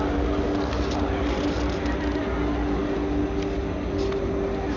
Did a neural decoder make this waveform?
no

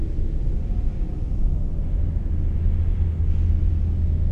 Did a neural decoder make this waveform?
no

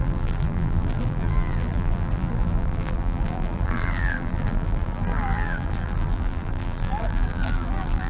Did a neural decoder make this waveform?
yes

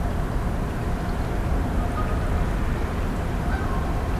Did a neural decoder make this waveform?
no